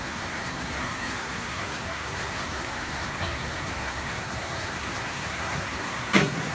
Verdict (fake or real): fake